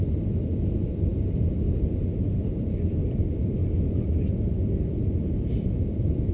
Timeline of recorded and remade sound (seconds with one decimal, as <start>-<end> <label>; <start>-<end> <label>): 0.0-1.1 remade; 1.1-2.5 recorded; 2.5-3.6 remade; 3.6-5.2 recorded; 5.2-6.3 remade